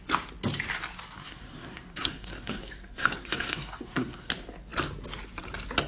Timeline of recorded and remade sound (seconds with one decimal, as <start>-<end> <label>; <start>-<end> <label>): 0.0-1.2 recorded; 1.2-4.3 remade; 4.3-5.9 recorded